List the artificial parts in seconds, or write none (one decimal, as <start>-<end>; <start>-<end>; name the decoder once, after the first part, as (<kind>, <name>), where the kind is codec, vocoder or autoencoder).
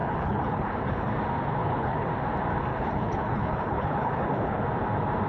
0.0-1.1 (codec, HILCodec); 1.6-2.1; 2.7-4.6